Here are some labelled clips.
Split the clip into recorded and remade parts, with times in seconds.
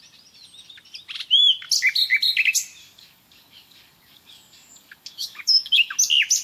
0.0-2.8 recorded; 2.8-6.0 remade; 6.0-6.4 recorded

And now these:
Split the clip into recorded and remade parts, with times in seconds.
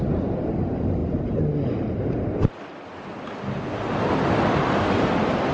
0.0-5.5 recorded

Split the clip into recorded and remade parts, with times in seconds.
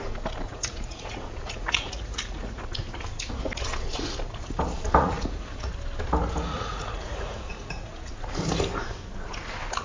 0.0-0.5 recorded; 0.5-2.5 remade; 2.5-5.0 recorded; 5.0-5.7 remade; 5.7-6.5 recorded; 6.5-8.1 remade; 8.1-9.8 recorded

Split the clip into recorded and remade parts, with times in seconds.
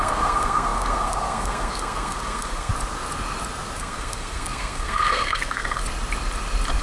0.0-2.7 remade; 2.7-3.8 recorded; 3.8-5.8 remade; 5.8-6.8 recorded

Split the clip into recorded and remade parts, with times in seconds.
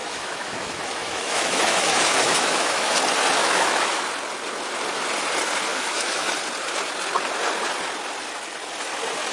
0.0-2.9 remade; 2.9-3.4 recorded; 3.4-4.0 remade; 4.0-5.7 recorded; 5.7-6.3 remade; 6.3-9.3 recorded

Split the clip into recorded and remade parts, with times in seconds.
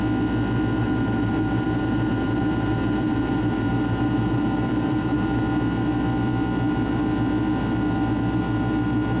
0.0-0.8 recorded; 0.8-5.4 remade; 5.4-9.2 recorded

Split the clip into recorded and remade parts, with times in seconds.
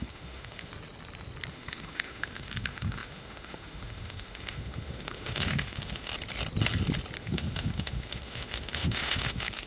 0.0-0.7 remade; 0.7-1.5 recorded; 1.5-6.1 remade; 6.1-7.2 recorded; 7.2-9.7 remade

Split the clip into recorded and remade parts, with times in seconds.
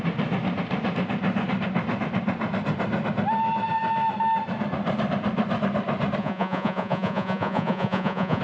0.0-6.2 recorded; 6.2-8.4 remade